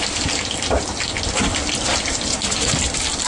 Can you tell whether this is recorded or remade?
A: recorded